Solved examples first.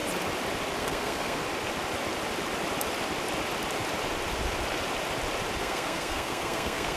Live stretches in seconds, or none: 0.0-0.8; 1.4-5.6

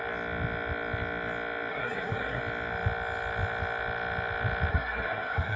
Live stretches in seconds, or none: 0.0-1.7; 2.4-4.7

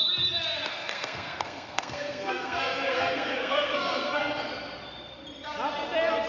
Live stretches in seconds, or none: 0.0-0.7; 4.5-6.3

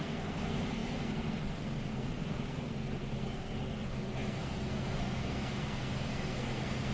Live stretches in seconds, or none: none